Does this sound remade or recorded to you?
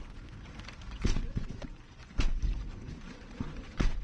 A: remade